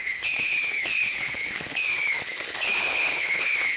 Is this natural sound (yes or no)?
no